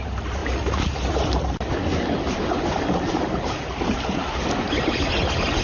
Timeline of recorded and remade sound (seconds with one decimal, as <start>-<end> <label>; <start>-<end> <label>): 0.0-5.6 recorded